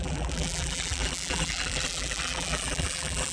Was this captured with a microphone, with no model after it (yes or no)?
no